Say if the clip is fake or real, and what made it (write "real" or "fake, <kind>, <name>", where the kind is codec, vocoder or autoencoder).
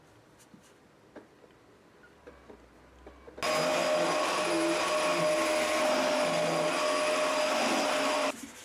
real